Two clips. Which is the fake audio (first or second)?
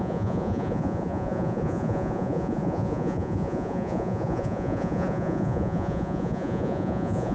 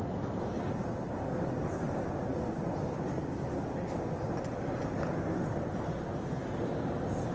first